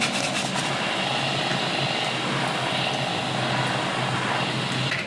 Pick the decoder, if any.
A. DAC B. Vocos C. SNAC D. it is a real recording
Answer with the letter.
D